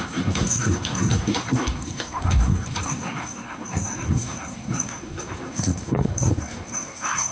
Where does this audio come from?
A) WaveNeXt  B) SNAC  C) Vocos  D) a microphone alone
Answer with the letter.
B